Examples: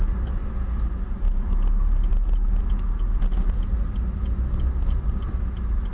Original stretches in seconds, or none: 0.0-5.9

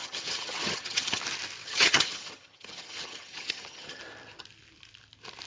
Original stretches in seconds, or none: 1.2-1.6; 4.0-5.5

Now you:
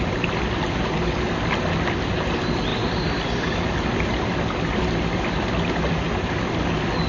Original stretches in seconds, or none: 0.0-7.1

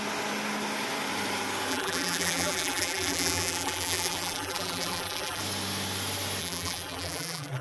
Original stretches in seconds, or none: 0.0-1.7; 5.4-6.4

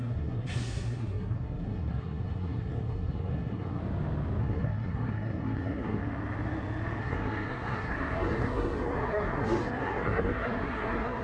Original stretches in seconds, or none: 3.8-4.4; 6.0-7.0

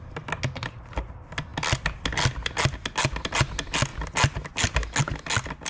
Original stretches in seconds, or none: 0.0-5.7

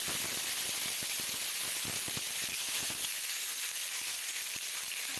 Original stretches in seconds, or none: 0.0-2.5; 4.4-5.2